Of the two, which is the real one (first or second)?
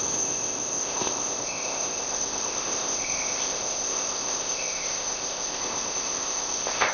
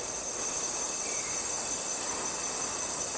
second